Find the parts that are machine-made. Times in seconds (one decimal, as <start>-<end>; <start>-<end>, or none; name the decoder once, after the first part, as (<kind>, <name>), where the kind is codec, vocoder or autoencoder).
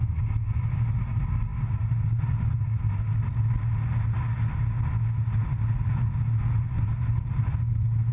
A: none